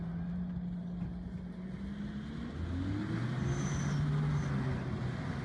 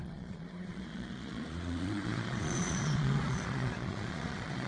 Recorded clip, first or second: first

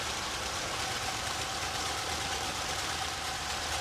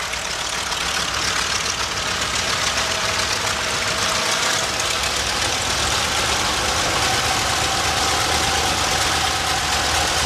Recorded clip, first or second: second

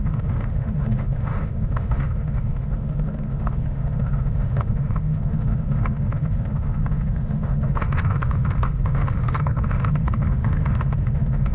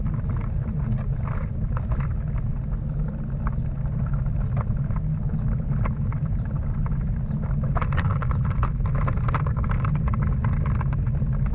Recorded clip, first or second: second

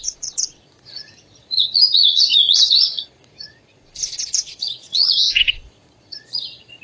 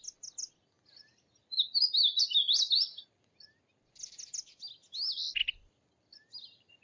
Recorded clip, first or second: second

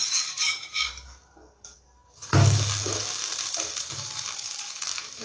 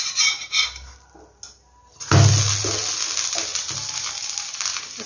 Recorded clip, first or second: second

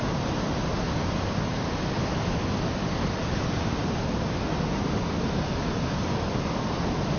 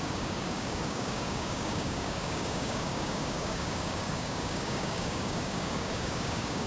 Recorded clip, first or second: first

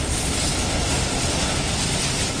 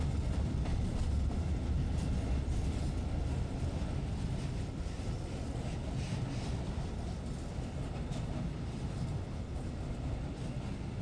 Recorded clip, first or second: second